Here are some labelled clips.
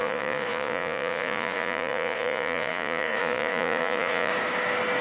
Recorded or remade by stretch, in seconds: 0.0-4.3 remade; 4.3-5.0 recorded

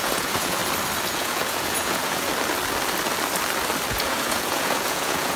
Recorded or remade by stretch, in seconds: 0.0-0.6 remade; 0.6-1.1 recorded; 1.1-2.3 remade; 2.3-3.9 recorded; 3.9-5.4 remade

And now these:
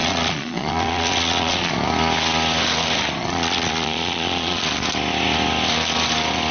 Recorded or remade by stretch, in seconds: 0.0-1.7 remade; 1.7-3.2 recorded; 3.2-4.6 remade; 4.6-6.5 recorded